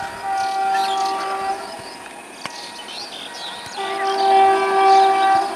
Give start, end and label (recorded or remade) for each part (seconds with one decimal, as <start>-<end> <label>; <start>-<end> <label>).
0.0-5.6 recorded